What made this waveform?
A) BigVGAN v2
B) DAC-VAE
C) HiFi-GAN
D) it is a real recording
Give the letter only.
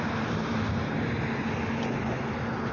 D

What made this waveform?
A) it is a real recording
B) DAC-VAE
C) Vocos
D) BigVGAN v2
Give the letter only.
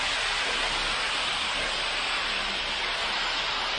A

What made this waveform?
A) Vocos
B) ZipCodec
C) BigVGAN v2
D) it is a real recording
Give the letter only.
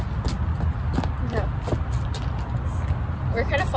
D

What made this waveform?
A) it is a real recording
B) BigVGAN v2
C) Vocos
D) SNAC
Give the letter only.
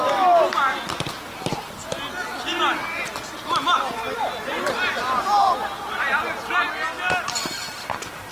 A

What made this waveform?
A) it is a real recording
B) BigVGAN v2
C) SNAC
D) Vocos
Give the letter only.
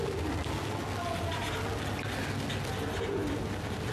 A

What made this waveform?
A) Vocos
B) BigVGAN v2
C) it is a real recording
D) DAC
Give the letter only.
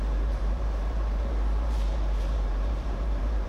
B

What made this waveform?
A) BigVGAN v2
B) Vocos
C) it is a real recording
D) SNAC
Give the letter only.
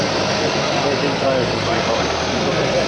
C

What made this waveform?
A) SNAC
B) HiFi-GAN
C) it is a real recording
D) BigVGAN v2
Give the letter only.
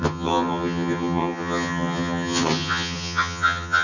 B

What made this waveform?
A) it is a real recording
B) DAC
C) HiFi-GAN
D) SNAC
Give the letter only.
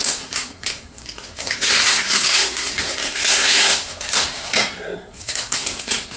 D